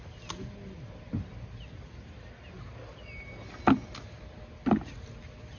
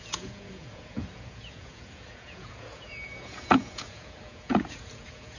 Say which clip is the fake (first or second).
second